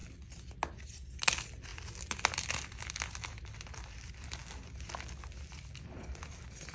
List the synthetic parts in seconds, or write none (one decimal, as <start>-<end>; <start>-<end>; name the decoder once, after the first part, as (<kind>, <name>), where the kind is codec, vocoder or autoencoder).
none